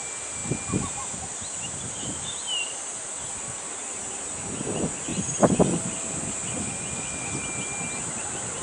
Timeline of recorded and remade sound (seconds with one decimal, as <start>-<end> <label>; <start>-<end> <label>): 0.0-0.4 remade; 0.4-1.3 recorded; 1.3-5.1 remade; 5.1-8.1 recorded; 8.1-8.6 remade